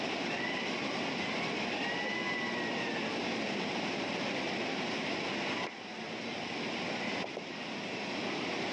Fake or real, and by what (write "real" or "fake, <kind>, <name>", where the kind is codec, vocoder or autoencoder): real